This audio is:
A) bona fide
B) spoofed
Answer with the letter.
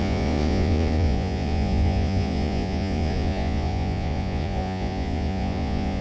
B